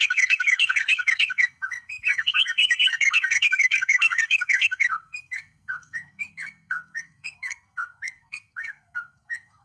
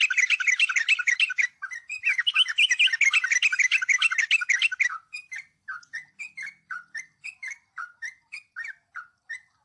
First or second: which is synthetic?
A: first